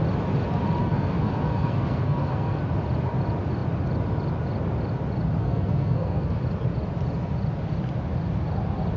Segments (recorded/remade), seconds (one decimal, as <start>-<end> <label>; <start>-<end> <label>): 0.0-0.8 recorded; 0.8-2.6 remade; 2.6-5.4 recorded; 5.4-6.4 remade; 6.4-9.0 recorded